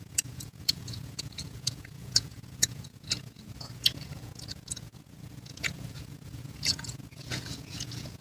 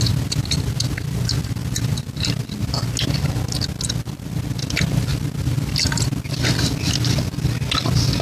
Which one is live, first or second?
second